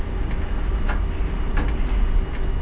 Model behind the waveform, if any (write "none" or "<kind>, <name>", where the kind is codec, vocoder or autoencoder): none